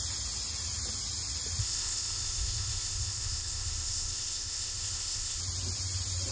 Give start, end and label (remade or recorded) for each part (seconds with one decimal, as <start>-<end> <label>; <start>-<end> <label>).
0.0-1.6 recorded; 1.6-5.4 remade; 5.4-6.3 recorded